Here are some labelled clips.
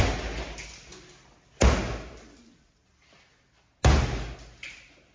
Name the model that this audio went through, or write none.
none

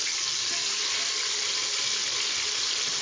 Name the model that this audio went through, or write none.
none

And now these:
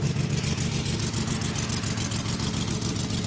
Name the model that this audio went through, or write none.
none